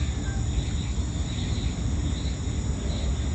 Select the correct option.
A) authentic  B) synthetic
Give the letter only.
A